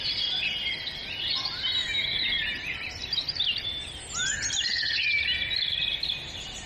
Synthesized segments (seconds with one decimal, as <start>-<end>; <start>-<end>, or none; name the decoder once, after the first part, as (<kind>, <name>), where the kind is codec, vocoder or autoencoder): none